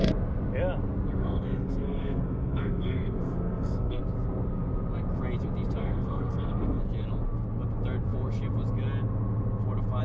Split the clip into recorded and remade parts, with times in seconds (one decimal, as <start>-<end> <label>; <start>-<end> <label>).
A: 0.0-1.2 recorded; 1.2-4.0 remade; 4.0-5.8 recorded; 5.8-6.8 remade; 6.8-10.0 recorded